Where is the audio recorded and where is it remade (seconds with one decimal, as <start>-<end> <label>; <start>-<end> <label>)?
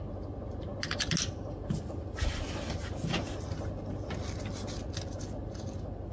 0.0-6.1 recorded